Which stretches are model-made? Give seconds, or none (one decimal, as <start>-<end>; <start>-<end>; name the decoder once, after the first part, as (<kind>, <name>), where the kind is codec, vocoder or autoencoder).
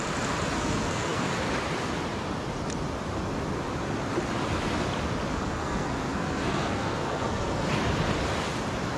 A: 0.5-1.3 (codec, SNAC); 5.3-7.7